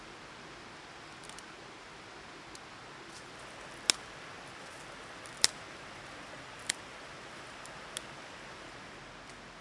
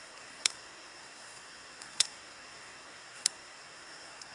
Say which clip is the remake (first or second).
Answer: second